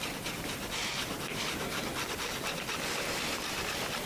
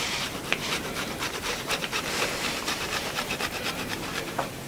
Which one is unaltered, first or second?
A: first